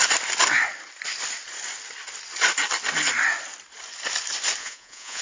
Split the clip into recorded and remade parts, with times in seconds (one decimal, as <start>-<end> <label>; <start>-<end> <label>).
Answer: 0.0-4.6 recorded; 4.6-5.2 remade